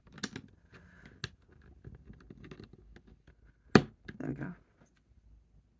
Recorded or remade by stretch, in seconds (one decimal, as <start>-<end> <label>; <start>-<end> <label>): 0.0-5.8 recorded